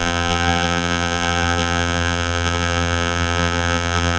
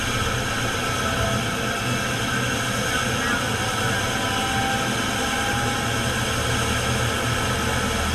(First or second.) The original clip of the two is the second